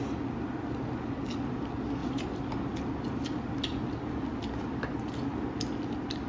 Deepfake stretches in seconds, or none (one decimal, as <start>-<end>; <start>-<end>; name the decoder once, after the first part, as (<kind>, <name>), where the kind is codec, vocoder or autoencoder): none